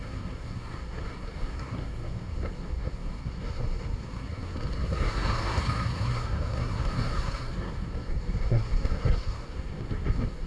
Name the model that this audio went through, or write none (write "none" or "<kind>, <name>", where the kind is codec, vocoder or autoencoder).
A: codec, SNAC